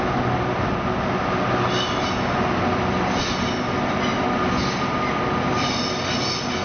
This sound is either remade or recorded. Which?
recorded